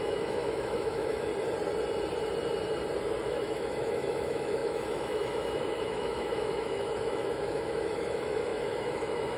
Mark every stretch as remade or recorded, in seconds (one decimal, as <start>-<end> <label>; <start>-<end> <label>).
0.0-1.3 remade; 1.3-3.2 recorded; 3.2-9.4 remade